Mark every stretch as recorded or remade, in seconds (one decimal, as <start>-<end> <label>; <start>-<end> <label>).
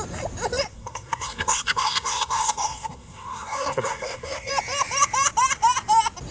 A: 0.0-0.7 recorded; 0.7-4.5 remade; 4.5-6.3 recorded